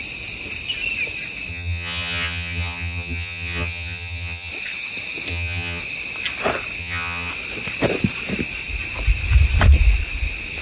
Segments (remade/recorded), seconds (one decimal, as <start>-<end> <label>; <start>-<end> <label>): 0.0-1.5 recorded; 1.5-4.5 remade; 4.5-5.3 recorded; 5.3-5.8 remade; 5.8-6.8 recorded; 6.8-7.3 remade; 7.3-10.6 recorded